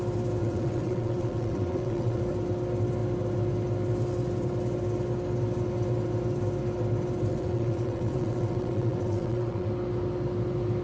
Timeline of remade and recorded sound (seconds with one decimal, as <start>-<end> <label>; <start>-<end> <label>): 0.0-0.4 recorded; 0.4-2.2 remade; 2.2-7.3 recorded; 7.3-9.7 remade; 9.7-10.8 recorded